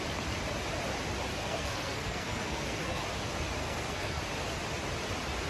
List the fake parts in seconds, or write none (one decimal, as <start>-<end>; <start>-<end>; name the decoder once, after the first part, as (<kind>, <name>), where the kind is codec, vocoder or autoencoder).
1.3-3.0 (codec, SNAC); 3.6-4.2